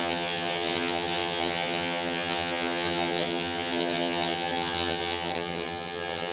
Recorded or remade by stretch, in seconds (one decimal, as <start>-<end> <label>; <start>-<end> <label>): 0.0-6.3 remade